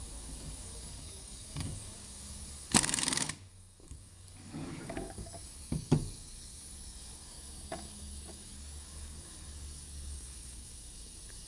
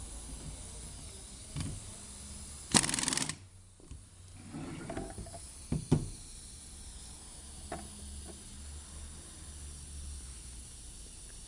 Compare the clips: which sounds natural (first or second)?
second